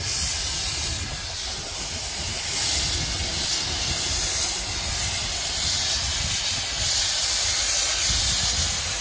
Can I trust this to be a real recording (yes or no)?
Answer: yes